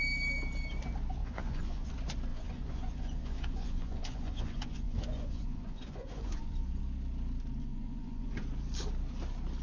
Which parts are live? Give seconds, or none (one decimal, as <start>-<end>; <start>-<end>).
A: 0.0-1.2; 1.9-2.3; 6.8-7.6; 8.3-9.6